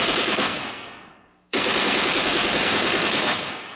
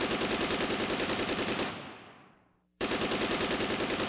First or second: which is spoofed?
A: first